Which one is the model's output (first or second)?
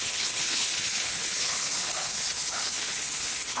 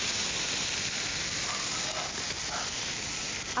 first